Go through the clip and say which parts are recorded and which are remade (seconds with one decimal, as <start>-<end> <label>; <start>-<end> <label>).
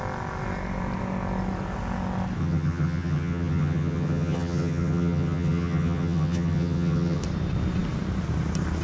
0.0-2.4 recorded; 2.4-7.2 remade; 7.2-8.8 recorded